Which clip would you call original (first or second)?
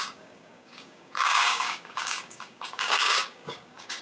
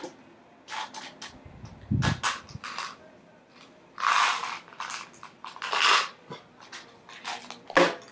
second